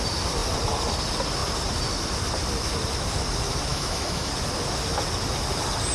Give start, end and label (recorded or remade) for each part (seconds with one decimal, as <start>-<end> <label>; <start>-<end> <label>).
0.0-3.7 recorded; 3.7-4.3 remade; 4.3-5.9 recorded